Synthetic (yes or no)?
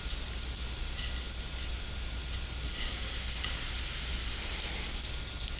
no